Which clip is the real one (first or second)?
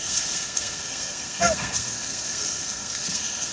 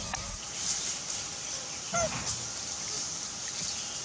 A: second